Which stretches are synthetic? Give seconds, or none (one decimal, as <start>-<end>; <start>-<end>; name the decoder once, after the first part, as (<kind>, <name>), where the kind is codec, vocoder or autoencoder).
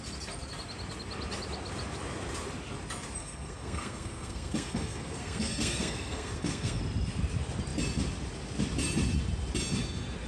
3.2-6.8 (codec, SNAC)